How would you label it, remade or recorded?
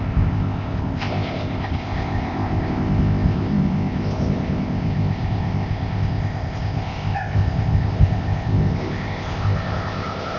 remade